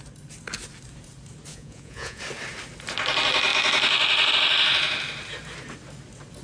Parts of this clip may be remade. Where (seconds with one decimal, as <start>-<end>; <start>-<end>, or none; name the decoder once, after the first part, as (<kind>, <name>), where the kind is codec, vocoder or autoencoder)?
1.5-2.2 (vocoder, Vocos)